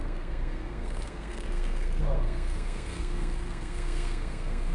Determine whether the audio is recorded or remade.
remade